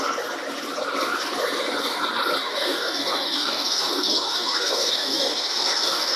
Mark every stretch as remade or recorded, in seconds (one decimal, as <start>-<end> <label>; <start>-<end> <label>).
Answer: 0.0-2.4 recorded; 2.4-6.2 remade